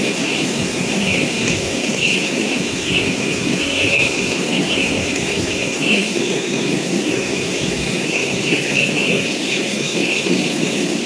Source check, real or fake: fake